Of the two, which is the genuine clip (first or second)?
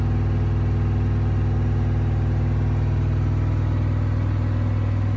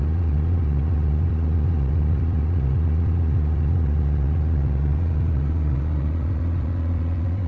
first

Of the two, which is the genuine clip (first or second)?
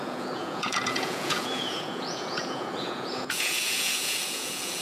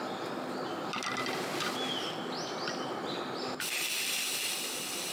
second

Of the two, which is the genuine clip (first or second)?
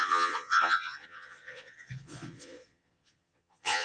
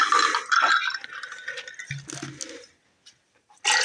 second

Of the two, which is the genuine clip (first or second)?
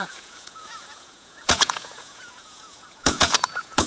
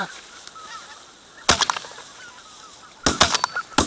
second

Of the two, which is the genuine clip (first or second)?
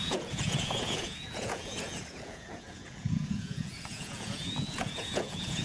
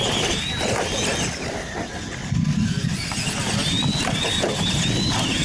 second